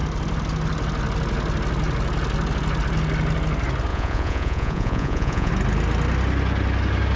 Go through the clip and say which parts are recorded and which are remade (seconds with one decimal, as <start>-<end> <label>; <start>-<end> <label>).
0.0-3.9 recorded; 3.9-5.5 remade; 5.5-7.2 recorded